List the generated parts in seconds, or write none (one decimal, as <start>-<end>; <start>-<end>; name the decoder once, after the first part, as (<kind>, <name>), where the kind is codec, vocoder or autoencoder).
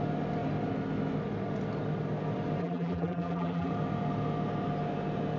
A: 2.6-3.7 (vocoder, BigVGAN v2)